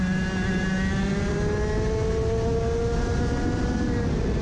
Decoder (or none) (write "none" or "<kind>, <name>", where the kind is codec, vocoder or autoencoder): none